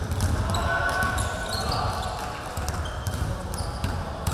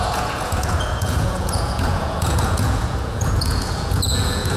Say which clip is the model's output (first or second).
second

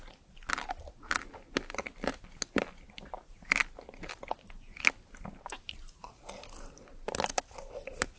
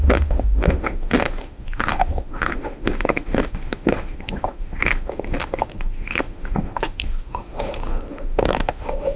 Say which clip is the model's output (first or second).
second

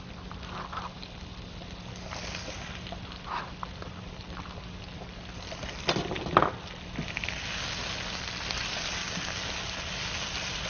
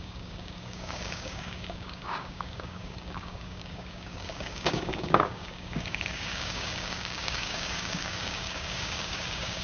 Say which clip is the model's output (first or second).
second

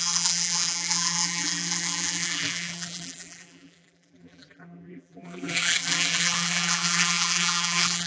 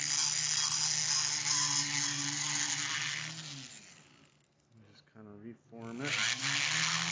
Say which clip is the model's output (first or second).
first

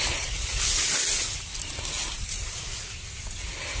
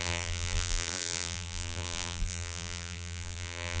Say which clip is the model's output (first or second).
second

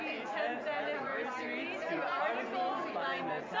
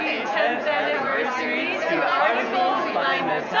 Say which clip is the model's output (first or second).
second